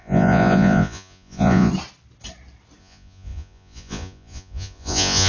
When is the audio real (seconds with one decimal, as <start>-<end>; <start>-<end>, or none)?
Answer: 1.7-2.8